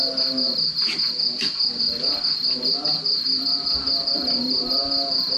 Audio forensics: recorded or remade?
recorded